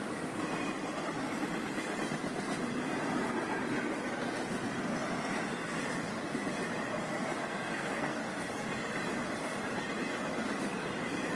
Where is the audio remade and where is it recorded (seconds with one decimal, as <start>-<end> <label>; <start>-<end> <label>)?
0.0-7.4 recorded; 7.4-8.2 remade; 8.2-11.4 recorded